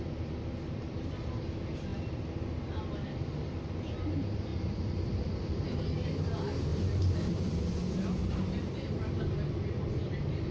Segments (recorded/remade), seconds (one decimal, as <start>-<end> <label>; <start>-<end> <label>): 0.0-4.5 recorded; 4.5-5.8 remade; 5.8-6.7 recorded; 6.7-7.3 remade; 7.3-10.5 recorded